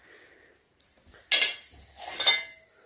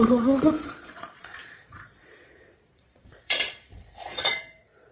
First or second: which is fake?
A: second